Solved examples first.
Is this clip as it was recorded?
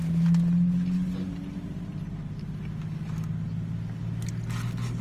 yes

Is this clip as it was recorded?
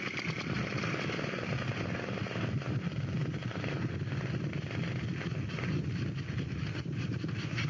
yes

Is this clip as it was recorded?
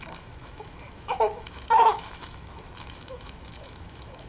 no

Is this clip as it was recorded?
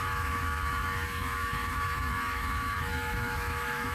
no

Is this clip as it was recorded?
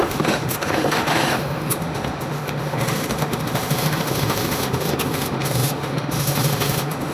no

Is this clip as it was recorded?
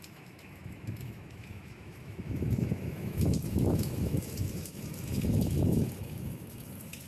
no